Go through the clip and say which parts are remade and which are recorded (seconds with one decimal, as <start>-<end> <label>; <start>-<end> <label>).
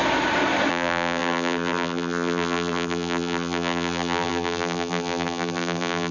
0.0-0.7 recorded; 0.7-6.1 remade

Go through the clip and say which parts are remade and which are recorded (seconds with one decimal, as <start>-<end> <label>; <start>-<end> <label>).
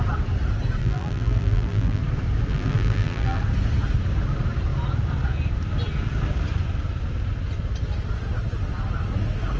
0.0-0.8 recorded; 0.8-2.0 remade; 2.0-2.5 recorded; 2.5-3.4 remade; 3.4-9.6 recorded